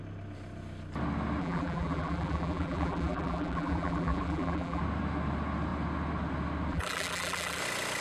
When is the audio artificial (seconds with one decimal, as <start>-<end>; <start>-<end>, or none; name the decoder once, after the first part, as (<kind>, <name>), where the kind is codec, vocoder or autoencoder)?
1.4-4.8 (vocoder, BigVGAN v2); 6.7-7.6